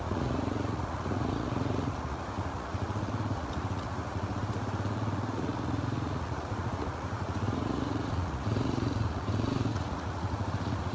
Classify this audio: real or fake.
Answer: fake